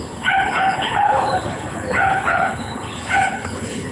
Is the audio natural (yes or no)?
no